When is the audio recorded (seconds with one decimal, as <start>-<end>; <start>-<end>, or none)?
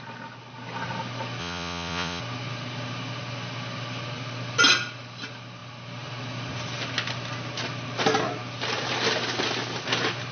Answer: 0.0-1.4; 2.2-10.3